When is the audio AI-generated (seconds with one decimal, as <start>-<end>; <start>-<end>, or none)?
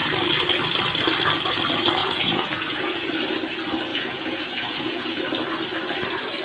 2.0-3.1; 3.9-5.2